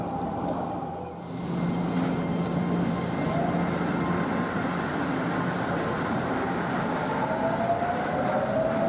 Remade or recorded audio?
recorded